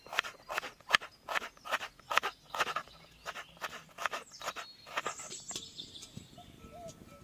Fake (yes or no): no